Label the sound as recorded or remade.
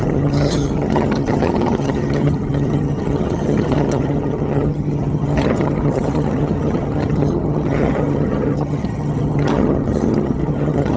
remade